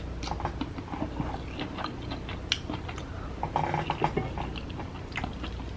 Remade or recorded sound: recorded